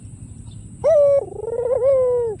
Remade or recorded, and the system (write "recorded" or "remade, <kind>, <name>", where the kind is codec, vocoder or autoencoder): recorded